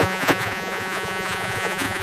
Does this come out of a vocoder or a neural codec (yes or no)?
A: yes